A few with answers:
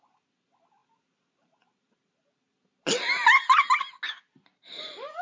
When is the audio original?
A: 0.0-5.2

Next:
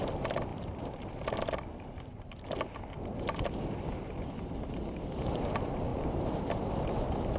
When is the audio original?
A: 0.0-7.4

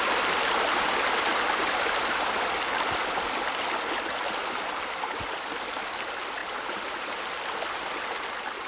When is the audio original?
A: 0.0-8.7